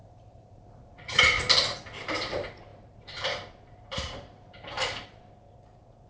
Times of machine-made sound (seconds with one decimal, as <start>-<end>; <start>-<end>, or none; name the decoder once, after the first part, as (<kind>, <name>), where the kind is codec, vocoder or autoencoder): 0.0-1.2 (vocoder, BigVGAN v2); 2.7-5.3